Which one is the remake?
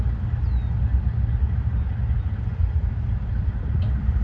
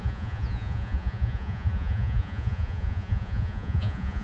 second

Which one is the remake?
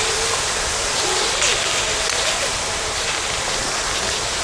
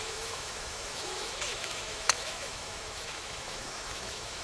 second